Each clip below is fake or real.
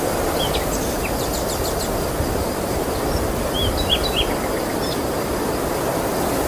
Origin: real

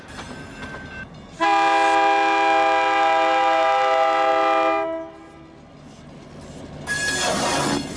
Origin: real